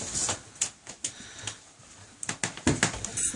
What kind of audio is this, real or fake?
real